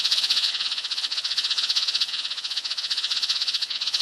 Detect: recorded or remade remade